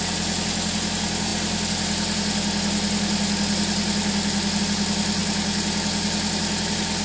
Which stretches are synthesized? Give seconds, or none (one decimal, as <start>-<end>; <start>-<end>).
none